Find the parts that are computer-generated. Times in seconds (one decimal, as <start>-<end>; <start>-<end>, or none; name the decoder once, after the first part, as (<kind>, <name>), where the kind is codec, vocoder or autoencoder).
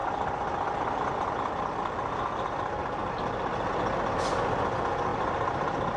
none